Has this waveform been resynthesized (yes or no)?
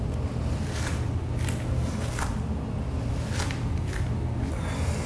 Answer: no